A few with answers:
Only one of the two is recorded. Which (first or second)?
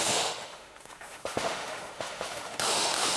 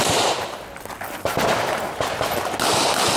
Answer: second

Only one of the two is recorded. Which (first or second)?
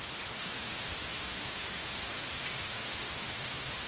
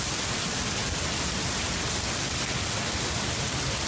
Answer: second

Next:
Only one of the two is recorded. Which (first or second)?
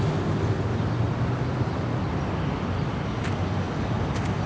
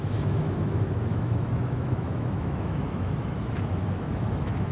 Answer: first